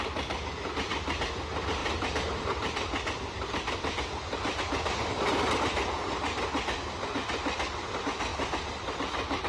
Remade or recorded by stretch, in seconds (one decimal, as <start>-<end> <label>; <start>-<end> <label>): 0.0-1.8 recorded; 1.8-4.6 remade; 4.6-9.5 recorded